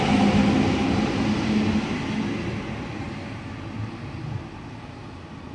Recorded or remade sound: recorded